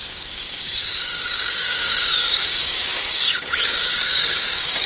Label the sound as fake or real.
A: fake